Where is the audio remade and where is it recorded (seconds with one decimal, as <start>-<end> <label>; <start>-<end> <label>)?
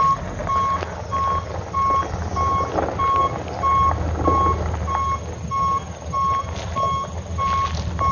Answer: 0.0-8.1 recorded